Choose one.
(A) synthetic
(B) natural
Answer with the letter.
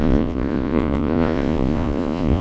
A